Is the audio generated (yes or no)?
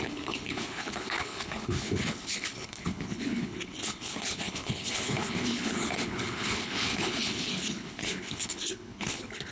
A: yes